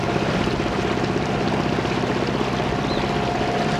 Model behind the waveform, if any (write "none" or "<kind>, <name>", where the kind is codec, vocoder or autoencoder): none